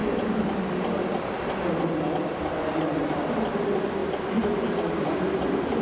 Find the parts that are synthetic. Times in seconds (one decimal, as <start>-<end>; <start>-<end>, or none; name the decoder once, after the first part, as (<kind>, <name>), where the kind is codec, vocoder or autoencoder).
none